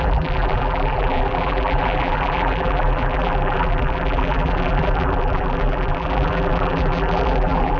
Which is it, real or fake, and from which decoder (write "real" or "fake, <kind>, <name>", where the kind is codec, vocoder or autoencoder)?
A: fake, vocoder, BigVGAN v2